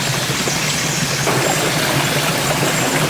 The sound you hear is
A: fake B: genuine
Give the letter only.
B